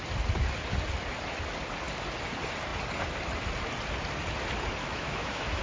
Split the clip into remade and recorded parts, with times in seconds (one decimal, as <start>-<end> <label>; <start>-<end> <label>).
0.0-4.8 recorded; 4.8-5.6 remade